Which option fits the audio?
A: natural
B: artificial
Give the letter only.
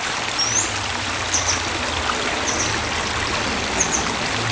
A